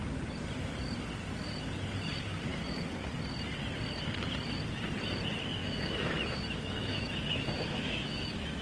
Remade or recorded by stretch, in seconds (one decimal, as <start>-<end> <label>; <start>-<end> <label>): 0.0-5.6 recorded; 5.6-8.6 remade